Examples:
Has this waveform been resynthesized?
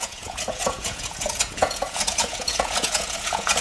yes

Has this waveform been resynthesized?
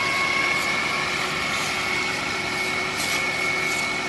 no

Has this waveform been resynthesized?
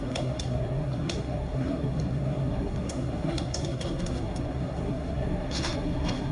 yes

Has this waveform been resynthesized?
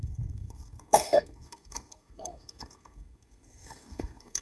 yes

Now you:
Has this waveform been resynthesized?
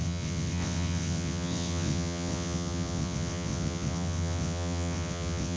yes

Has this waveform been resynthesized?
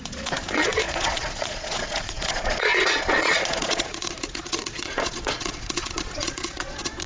yes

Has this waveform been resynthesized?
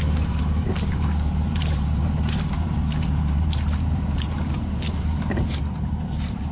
yes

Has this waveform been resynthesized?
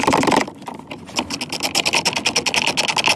no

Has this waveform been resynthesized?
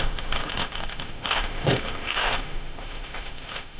yes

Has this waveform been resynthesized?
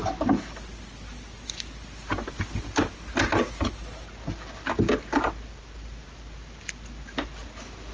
no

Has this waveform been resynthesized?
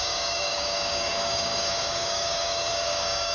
yes